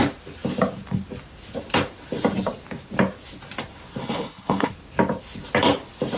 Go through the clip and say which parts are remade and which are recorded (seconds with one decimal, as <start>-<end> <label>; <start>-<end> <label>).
0.0-4.0 recorded; 4.0-4.7 remade; 4.7-6.2 recorded